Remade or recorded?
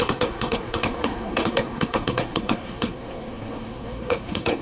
remade